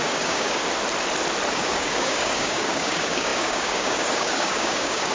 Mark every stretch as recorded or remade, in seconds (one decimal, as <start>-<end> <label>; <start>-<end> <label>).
0.0-0.6 remade; 0.6-1.5 recorded; 1.5-5.1 remade